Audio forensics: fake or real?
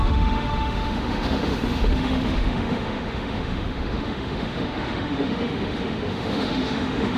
fake